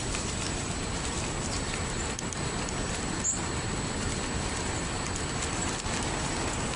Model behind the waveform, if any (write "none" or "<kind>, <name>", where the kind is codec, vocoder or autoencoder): vocoder, BigVGAN v2